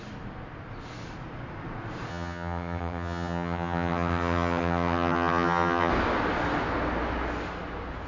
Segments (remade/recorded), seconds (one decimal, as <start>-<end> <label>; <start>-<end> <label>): 0.0-2.1 recorded; 2.1-5.9 remade; 5.9-8.1 recorded